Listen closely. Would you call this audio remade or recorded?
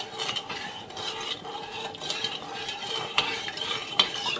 remade